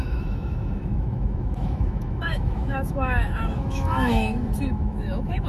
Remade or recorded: remade